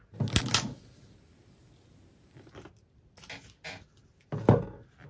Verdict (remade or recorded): recorded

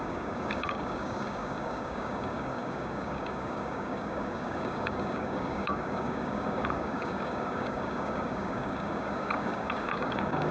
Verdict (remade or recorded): remade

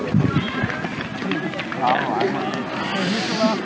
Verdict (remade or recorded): recorded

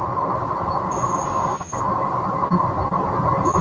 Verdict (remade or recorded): recorded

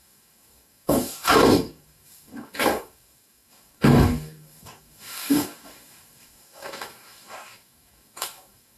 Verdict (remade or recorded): remade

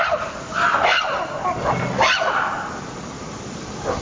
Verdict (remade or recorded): recorded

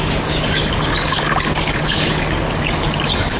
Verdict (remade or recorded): remade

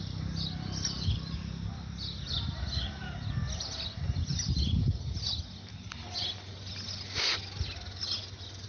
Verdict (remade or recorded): recorded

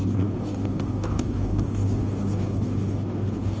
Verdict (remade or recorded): remade